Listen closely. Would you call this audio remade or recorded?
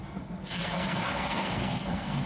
remade